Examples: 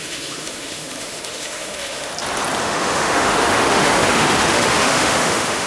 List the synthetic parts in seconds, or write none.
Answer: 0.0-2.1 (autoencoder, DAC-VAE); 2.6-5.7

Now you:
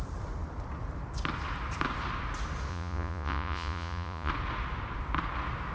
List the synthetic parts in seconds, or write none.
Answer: 2.7-4.3 (vocoder, Vocos)

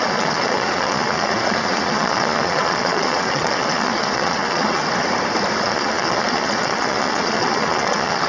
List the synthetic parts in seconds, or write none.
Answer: 0.0-4.8 (vocoder, Vocos); 5.6-8.3

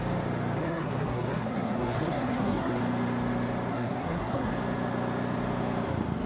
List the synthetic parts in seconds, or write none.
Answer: 0.6-2.8 (codec, SNAC); 3.7-4.5